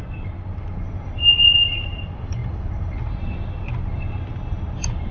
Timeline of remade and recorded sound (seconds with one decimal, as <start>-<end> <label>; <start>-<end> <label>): 0.0-5.1 recorded

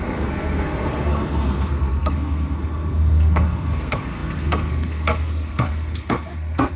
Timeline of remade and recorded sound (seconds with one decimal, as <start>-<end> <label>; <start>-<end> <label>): 0.0-6.8 remade